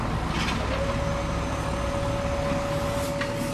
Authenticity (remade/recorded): recorded